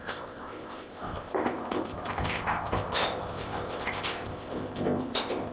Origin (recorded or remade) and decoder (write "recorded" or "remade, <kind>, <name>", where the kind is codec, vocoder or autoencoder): remade, codec, ZipCodec